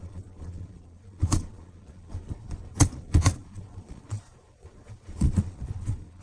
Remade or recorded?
remade